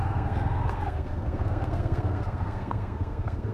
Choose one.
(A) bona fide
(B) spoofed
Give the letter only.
B